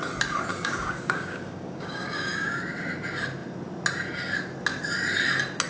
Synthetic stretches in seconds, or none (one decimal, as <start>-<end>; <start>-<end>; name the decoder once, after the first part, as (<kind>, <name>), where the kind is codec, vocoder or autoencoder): 0.5-2.6 (codec, DAC)